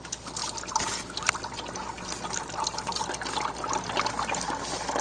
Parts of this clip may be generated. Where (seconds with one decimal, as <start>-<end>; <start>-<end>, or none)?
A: none